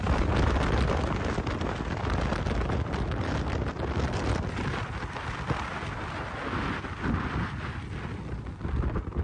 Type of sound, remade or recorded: recorded